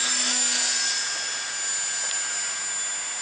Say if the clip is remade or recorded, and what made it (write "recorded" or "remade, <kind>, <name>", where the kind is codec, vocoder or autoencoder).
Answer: recorded